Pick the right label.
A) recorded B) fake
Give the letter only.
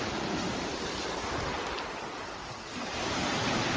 A